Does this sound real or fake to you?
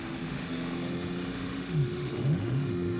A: fake